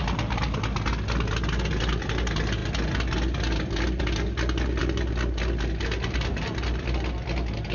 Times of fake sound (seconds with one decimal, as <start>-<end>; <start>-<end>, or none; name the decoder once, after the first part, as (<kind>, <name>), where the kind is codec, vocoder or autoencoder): none